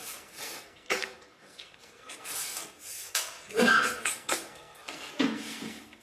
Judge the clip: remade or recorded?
remade